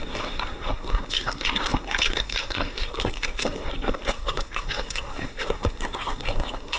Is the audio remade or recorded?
remade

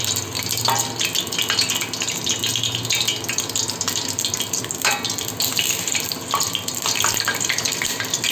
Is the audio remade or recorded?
recorded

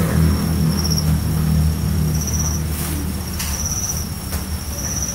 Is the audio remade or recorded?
recorded